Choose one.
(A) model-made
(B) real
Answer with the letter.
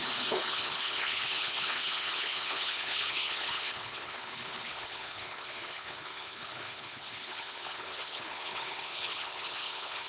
A